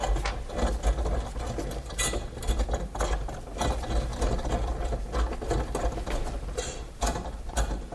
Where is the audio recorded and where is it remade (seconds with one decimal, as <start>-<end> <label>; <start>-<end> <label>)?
0.0-7.9 recorded